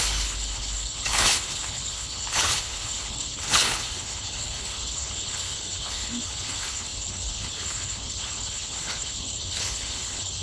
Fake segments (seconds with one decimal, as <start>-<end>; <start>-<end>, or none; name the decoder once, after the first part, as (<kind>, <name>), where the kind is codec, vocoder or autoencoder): 0.0-10.4 (codec, HILCodec)